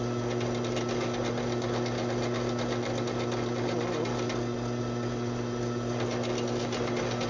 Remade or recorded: recorded